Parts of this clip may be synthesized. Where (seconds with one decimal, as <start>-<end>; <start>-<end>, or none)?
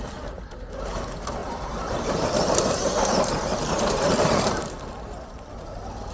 1.4-4.6